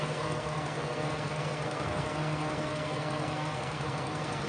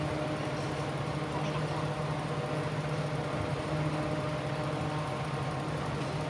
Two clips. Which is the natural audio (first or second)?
second